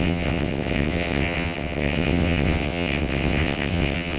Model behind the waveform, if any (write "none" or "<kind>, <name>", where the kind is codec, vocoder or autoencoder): vocoder, WaveNeXt